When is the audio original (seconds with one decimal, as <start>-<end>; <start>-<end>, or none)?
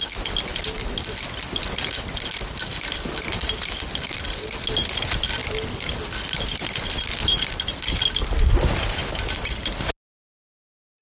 0.0-11.0